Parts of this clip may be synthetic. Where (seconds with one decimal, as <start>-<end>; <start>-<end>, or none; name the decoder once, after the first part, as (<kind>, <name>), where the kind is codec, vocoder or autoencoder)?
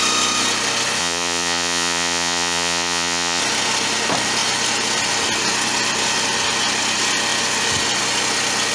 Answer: 1.0-3.4 (vocoder, Vocos)